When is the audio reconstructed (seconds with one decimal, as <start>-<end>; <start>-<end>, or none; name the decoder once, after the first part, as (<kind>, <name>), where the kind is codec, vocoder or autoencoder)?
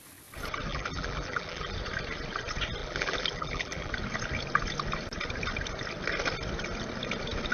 0.7-1.7 (vocoder, BigVGAN v2); 2.8-3.9